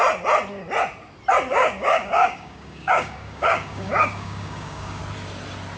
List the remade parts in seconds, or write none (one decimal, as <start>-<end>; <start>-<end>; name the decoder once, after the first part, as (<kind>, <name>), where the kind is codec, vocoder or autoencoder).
1.5-5.0 (codec, DAC)